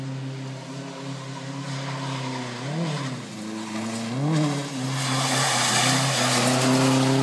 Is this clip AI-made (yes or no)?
no